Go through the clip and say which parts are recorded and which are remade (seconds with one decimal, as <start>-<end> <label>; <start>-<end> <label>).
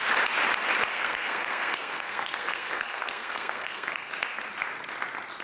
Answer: 0.0-0.9 recorded; 0.9-4.1 remade; 4.1-5.4 recorded